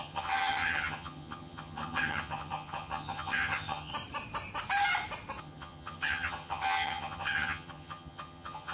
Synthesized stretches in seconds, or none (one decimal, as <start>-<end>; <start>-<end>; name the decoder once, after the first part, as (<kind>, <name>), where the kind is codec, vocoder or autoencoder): 0.0-3.9 (vocoder, HiFi-GAN); 5.4-8.7